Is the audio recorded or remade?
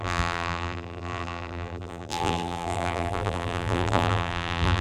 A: remade